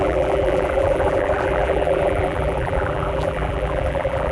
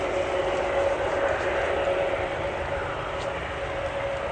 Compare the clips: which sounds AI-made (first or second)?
first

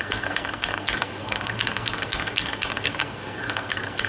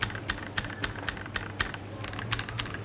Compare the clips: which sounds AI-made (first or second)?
first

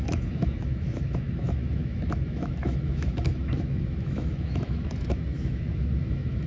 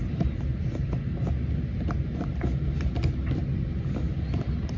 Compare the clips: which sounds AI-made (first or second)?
first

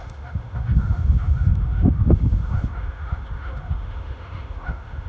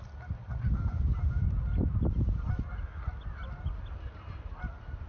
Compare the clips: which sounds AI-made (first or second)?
first